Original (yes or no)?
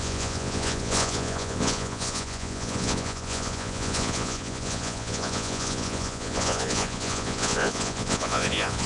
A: no